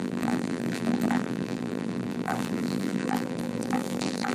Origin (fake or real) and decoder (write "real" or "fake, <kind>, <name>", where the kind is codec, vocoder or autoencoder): fake, vocoder, BigVGAN v2